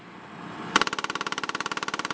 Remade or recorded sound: remade